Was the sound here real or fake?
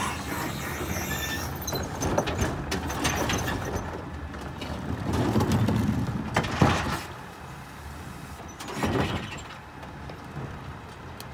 real